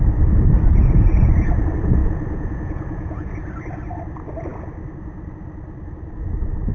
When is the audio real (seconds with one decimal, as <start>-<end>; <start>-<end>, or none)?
0.0-0.8; 1.5-2.0; 3.3-6.7